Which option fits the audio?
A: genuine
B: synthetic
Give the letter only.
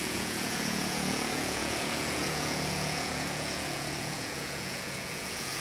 B